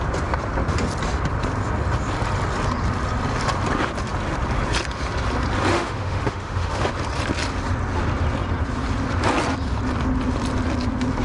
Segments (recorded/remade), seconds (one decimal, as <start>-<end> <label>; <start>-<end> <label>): 0.0-5.7 recorded; 5.7-6.9 remade; 6.9-11.2 recorded